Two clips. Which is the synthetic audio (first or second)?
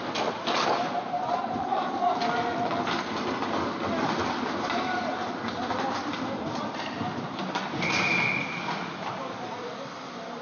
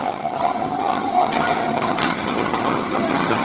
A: second